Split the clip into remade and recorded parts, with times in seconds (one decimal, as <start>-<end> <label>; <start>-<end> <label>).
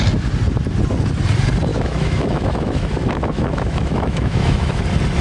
0.0-1.7 recorded; 1.7-4.8 remade; 4.8-5.2 recorded